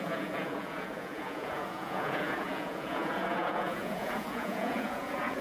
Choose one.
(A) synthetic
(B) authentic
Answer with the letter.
A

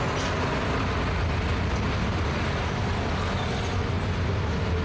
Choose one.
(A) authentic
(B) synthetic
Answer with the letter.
A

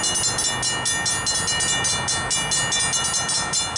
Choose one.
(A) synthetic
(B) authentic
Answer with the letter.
B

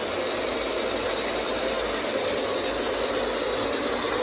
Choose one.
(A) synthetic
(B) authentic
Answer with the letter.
B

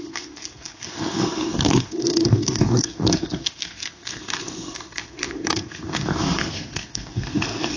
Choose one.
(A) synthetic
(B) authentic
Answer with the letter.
A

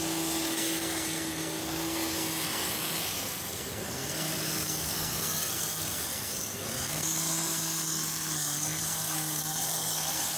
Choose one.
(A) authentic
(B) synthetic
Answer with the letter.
B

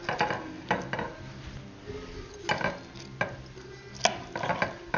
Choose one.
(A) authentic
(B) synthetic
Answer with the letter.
A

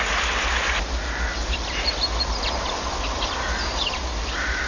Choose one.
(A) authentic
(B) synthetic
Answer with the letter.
A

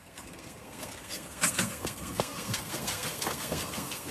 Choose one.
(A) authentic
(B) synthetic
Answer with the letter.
B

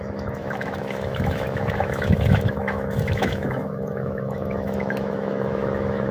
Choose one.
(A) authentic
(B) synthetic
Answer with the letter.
B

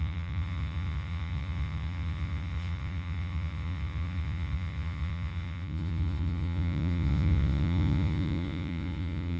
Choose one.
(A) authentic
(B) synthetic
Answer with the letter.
B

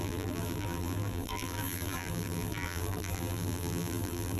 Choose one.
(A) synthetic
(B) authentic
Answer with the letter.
A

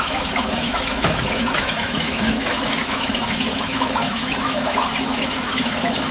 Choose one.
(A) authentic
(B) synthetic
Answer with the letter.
B